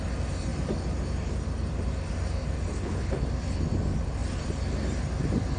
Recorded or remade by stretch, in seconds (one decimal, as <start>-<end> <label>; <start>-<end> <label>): 0.0-2.7 recorded; 2.7-3.2 remade; 3.2-5.6 recorded